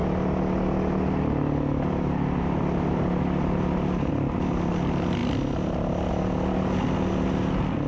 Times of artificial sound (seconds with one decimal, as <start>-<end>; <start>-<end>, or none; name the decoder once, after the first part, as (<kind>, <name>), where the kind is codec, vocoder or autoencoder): none